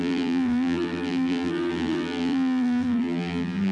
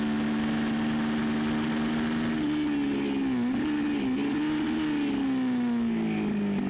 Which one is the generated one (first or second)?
first